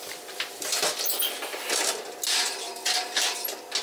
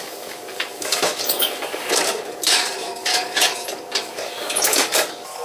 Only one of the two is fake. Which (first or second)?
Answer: second